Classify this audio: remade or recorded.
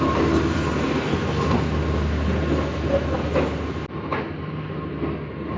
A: recorded